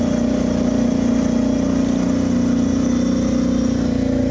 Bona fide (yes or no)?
yes